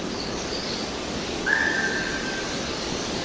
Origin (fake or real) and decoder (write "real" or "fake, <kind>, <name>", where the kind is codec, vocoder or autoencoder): fake, codec, DAC